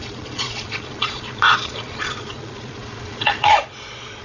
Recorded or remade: remade